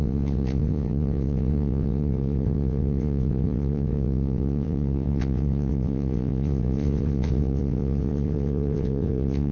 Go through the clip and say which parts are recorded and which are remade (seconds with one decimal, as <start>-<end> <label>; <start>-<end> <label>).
0.0-9.5 remade